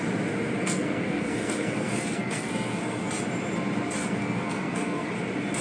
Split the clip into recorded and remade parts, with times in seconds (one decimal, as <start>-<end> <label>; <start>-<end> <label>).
0.0-0.6 recorded; 0.6-3.1 remade; 3.1-4.0 recorded; 4.0-5.1 remade; 5.1-5.6 recorded